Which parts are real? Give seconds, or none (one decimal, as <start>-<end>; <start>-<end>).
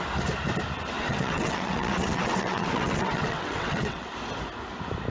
0.0-1.0; 4.1-5.1